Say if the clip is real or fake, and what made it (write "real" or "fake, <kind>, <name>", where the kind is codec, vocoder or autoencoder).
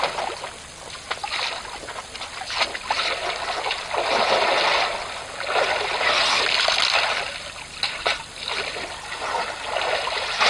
real